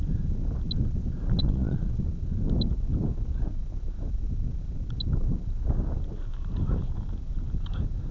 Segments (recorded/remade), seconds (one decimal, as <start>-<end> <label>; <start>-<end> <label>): 0.0-1.4 recorded; 1.4-2.1 remade; 2.1-8.1 recorded